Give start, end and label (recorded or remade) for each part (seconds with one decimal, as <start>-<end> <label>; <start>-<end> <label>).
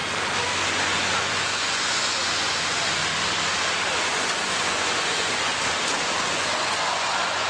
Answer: 0.0-0.7 recorded; 0.7-3.0 remade; 3.0-3.9 recorded; 3.9-5.5 remade; 5.5-6.0 recorded; 6.0-7.5 remade